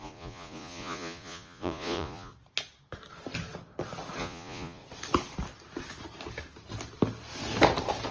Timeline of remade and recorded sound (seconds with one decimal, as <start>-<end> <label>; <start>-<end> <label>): 0.0-2.3 remade; 2.3-4.2 recorded; 4.2-4.8 remade; 4.8-8.1 recorded